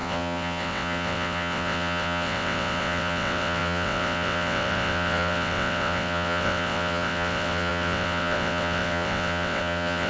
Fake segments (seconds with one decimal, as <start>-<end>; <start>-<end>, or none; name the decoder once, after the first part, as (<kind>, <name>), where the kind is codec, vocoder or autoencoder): 0.0-10.1 (vocoder, WaveNeXt)